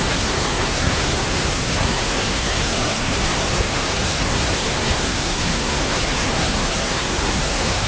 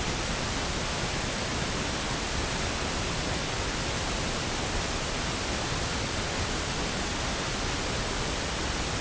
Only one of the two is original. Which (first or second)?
second